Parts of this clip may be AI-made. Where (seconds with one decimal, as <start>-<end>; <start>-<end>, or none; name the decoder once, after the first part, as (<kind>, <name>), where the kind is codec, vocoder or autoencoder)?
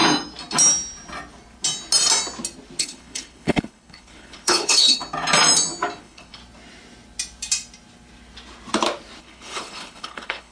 2.8-5.0 (codec, HILCodec); 6.0-6.4; 9.2-10.5